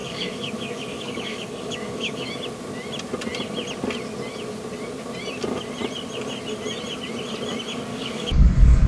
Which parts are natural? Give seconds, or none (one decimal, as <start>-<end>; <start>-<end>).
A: 2.3-7.9